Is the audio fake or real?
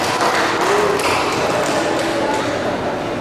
real